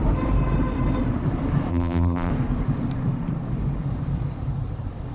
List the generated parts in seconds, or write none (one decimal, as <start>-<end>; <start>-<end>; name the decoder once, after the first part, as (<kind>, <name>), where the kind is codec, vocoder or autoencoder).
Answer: 1.7-2.3 (vocoder, BigVGAN v2)